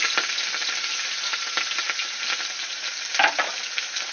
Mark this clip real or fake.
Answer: real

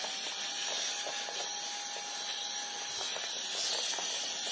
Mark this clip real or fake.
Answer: real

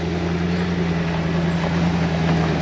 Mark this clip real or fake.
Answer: real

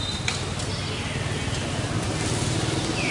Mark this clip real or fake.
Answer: real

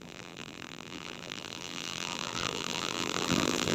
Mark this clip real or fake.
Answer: fake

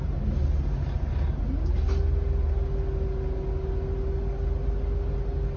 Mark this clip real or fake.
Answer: real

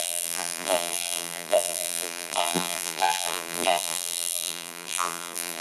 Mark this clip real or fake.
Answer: fake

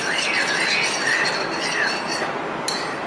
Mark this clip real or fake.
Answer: real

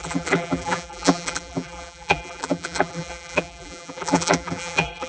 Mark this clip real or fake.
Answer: fake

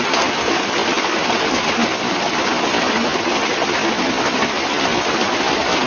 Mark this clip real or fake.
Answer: fake